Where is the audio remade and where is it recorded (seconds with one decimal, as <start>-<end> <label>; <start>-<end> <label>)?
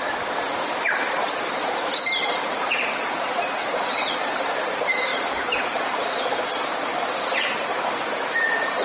0.0-8.8 remade